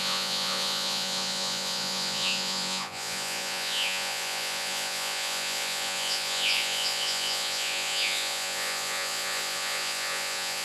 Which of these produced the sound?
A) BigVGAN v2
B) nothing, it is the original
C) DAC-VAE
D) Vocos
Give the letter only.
D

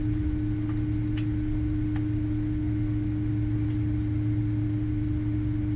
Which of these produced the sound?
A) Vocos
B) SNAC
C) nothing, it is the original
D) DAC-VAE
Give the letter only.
C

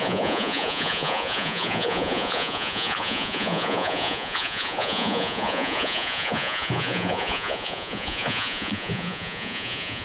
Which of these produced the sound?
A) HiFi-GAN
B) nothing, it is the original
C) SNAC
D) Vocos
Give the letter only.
D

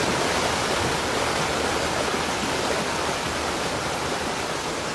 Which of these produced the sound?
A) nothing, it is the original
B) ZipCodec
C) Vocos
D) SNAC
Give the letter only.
A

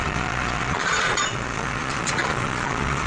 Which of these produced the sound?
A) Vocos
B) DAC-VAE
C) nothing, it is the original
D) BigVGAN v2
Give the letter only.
A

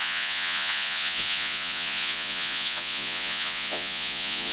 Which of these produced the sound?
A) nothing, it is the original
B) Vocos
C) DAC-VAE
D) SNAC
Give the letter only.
B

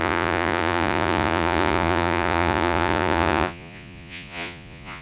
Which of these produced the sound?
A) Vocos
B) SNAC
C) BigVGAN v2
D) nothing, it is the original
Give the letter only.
A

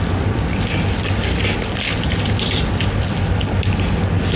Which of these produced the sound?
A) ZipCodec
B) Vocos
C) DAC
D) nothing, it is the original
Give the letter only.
D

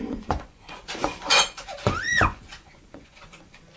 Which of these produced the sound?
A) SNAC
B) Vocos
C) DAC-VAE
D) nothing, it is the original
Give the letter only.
B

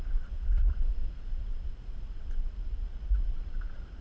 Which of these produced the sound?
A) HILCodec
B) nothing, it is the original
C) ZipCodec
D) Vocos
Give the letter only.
D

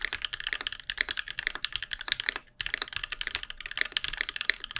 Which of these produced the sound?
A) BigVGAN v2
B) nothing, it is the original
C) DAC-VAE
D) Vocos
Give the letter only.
B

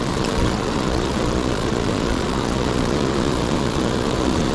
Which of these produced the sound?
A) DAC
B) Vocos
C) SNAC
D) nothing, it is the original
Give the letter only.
B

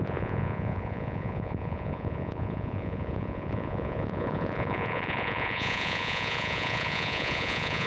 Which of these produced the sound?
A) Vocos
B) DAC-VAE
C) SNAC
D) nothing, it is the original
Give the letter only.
A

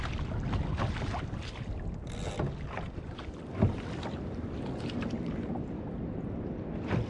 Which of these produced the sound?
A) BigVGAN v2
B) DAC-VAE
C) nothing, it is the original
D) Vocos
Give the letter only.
C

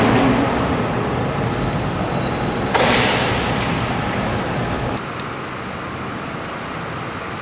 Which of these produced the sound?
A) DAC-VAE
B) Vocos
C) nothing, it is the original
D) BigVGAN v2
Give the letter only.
C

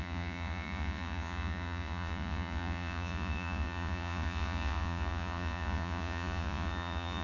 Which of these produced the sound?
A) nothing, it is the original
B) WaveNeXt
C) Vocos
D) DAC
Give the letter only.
C